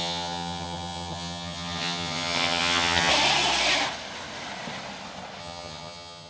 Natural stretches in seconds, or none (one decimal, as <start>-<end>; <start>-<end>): 3.1-5.4